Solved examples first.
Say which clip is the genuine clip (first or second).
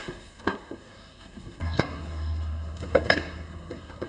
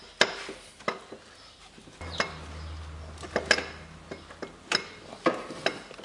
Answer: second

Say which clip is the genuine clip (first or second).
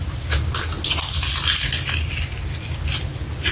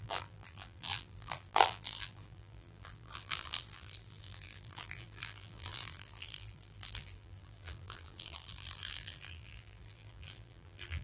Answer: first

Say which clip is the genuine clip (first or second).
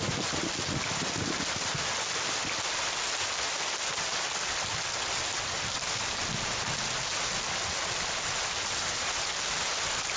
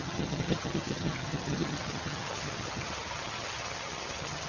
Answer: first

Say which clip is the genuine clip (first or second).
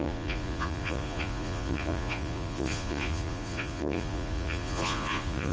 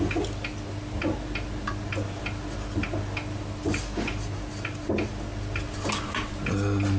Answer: second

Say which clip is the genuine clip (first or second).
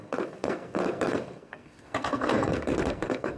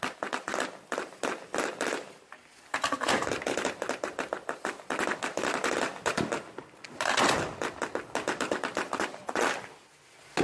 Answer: second